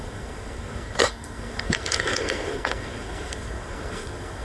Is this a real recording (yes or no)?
no